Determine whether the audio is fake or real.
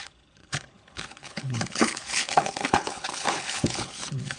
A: fake